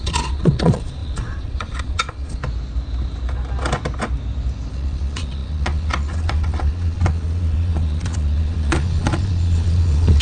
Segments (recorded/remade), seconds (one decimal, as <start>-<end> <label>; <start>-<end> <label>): 0.0-2.4 remade; 2.4-4.7 recorded; 4.7-10.2 remade

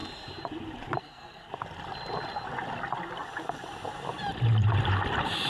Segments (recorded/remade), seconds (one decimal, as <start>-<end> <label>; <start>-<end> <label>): 0.0-1.0 recorded; 1.0-1.5 remade; 1.5-5.5 recorded

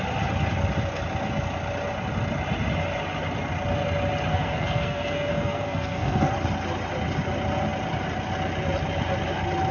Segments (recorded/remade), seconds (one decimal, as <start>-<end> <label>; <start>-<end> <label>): 0.0-4.3 recorded; 4.3-6.3 remade; 6.3-9.7 recorded

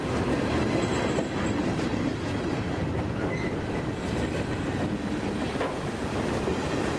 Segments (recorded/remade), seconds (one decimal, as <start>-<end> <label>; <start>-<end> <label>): 0.0-3.8 remade; 3.8-7.0 recorded

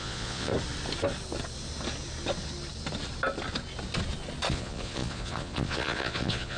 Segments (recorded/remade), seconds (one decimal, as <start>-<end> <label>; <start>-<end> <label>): 0.0-0.5 remade; 0.5-4.5 recorded; 4.5-6.6 remade

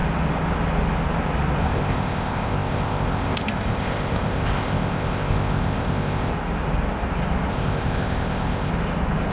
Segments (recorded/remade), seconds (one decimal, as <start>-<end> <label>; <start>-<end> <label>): 0.0-1.6 recorded; 1.6-6.3 remade; 6.3-7.5 recorded; 7.5-8.7 remade; 8.7-9.3 recorded

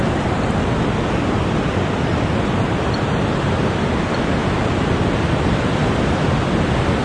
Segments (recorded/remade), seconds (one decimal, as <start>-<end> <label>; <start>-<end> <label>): 0.0-7.0 recorded